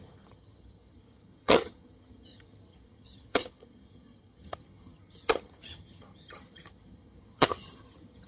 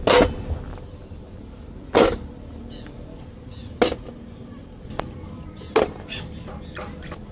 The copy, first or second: first